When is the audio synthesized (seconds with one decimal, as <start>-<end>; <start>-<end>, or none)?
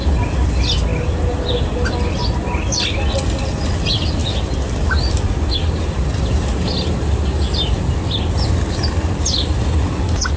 none